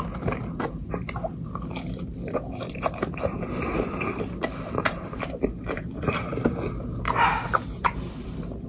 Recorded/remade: remade